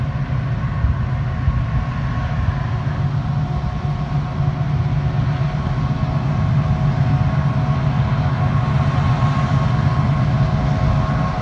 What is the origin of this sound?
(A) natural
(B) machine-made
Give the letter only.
A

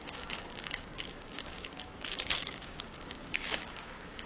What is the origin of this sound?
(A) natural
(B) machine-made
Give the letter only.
B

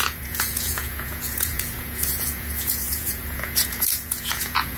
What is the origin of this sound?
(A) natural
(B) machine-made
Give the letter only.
B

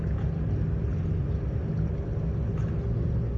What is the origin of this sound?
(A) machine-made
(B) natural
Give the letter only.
B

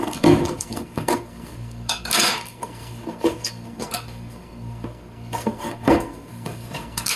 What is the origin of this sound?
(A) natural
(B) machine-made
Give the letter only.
B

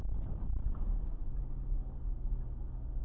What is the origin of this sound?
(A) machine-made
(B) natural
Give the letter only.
B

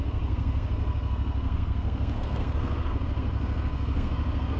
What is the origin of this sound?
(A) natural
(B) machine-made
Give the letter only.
B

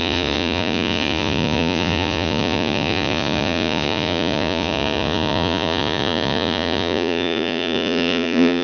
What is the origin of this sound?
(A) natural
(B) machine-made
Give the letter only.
B